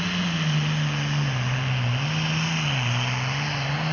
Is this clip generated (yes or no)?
no